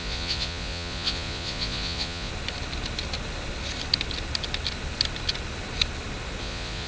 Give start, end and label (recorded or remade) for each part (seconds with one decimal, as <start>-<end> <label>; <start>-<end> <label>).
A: 0.0-2.3 remade; 2.3-6.4 recorded; 6.4-6.9 remade